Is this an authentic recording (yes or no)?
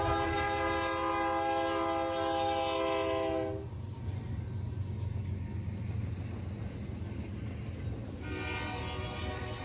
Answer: yes